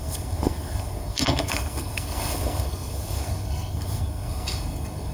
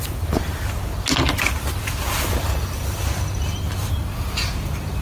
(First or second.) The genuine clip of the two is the second